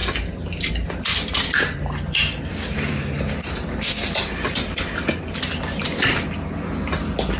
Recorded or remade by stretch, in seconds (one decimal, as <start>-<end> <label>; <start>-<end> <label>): 0.0-1.1 recorded; 1.1-5.5 remade; 5.5-7.4 recorded